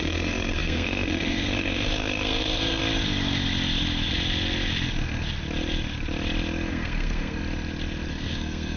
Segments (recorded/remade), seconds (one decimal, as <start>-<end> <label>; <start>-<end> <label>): 0.0-2.8 remade; 2.8-6.7 recorded; 6.7-7.4 remade; 7.4-8.1 recorded; 8.1-8.8 remade